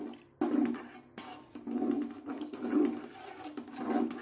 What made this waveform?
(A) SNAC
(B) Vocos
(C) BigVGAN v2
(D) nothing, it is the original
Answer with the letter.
D